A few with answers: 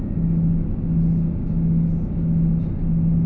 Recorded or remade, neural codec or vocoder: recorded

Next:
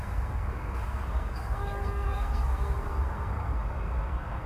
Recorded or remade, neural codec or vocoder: remade, codec, SNAC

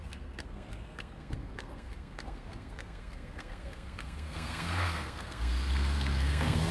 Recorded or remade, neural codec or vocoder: remade, codec, SNAC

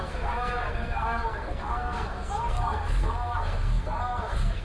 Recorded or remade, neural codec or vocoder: remade, codec, SNAC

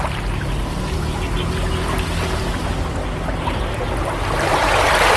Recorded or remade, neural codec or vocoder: recorded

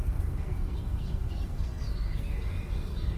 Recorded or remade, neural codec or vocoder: remade, codec, SNAC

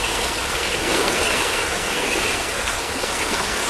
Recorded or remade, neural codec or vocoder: remade, codec, SNAC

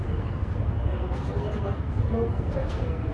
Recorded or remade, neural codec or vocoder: remade, codec, SNAC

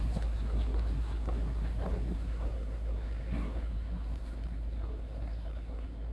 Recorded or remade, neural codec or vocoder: remade, codec, SNAC